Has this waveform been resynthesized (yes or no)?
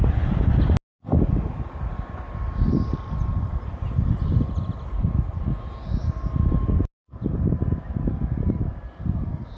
no